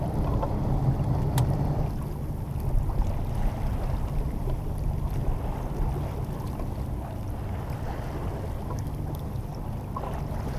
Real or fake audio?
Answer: real